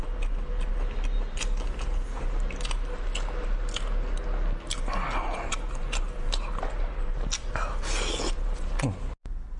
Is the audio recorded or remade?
recorded